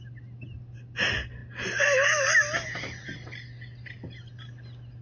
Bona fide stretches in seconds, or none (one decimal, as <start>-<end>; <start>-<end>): 0.0-5.0